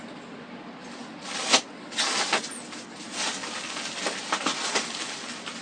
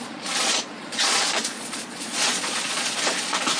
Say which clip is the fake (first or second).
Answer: second